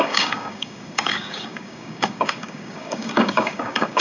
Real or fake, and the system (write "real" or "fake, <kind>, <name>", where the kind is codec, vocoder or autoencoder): fake, codec, DAC